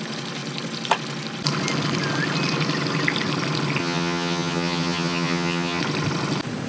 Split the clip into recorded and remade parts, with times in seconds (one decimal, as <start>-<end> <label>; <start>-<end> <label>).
0.0-3.8 recorded; 3.8-5.8 remade; 5.8-6.7 recorded